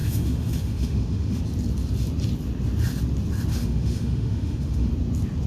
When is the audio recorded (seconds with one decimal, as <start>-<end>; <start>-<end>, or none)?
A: 1.4-3.5; 4.9-5.5